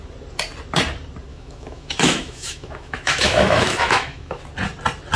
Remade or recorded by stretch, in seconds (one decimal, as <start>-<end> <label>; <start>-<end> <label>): 0.0-1.3 recorded; 1.3-4.4 remade; 4.4-5.2 recorded